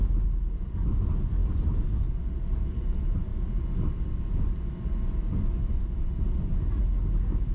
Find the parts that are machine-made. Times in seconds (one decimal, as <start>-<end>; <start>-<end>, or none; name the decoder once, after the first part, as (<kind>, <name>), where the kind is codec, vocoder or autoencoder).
none